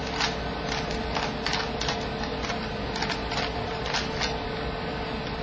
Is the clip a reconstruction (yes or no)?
no